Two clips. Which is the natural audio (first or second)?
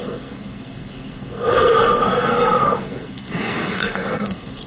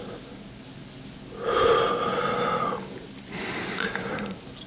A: second